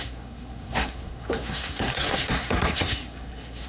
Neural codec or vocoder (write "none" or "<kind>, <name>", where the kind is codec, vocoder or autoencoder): codec, SNAC